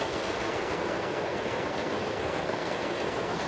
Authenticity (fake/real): fake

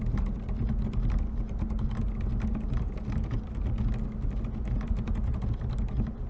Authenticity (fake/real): real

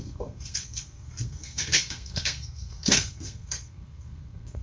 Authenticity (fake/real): fake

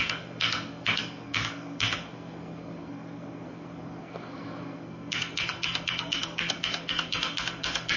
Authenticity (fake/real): fake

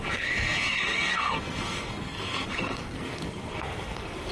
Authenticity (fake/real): fake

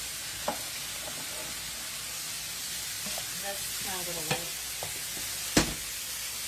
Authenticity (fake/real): real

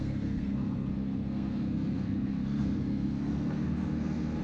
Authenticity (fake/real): fake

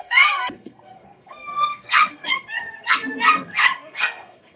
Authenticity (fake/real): fake